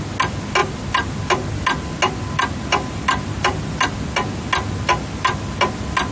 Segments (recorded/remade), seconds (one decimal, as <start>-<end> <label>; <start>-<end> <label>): 0.0-6.1 recorded